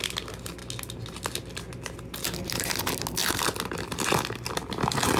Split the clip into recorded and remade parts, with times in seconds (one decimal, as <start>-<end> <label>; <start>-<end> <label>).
0.0-5.2 recorded